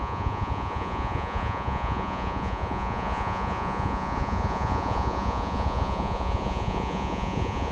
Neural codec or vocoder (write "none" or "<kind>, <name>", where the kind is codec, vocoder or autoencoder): vocoder, Vocos